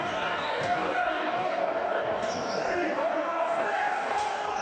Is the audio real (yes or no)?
no